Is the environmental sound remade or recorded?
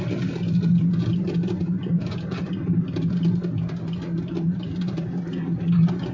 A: recorded